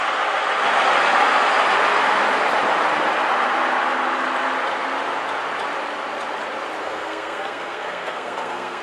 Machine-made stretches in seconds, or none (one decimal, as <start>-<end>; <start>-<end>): 6.8-8.8